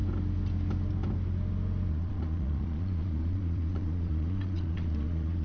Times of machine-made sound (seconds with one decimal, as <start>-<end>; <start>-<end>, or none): 1.9-5.4